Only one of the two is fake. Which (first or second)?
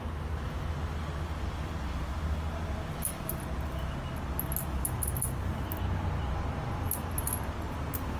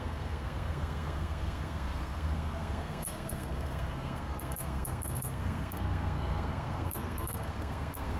second